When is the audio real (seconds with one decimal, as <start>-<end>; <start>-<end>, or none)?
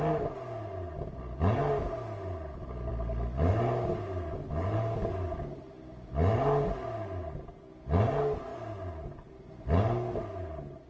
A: 0.0-10.9